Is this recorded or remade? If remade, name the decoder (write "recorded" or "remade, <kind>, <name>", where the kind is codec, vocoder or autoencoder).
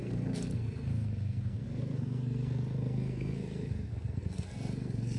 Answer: remade, codec, SNAC